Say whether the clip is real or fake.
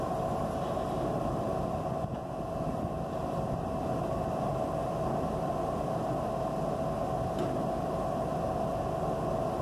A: real